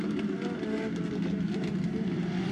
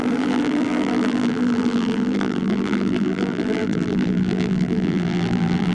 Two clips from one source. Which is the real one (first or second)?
first